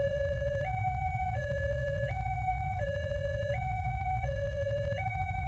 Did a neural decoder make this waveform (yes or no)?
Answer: yes